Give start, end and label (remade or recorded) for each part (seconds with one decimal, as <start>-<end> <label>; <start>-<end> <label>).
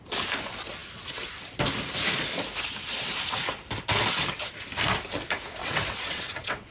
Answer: 0.0-5.6 recorded; 5.6-6.7 remade